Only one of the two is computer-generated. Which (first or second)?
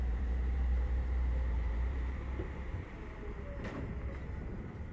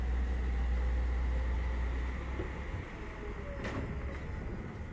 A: first